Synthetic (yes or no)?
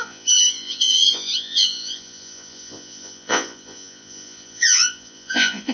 yes